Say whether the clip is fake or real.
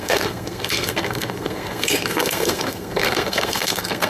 fake